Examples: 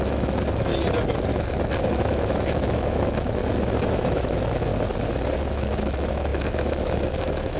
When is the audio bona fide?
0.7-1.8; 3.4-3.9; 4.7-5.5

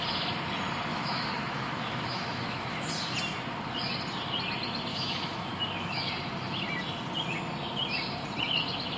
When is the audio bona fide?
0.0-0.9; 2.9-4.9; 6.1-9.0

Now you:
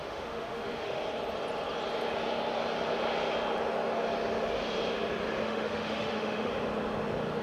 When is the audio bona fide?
1.0-5.4; 6.5-7.4

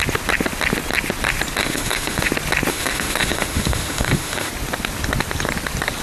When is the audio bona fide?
0.0-1.6; 2.3-2.7; 4.5-6.0

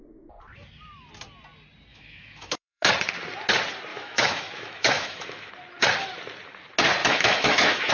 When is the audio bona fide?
0.0-1.9; 2.9-3.9; 5.5-7.0